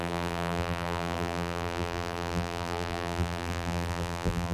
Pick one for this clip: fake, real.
fake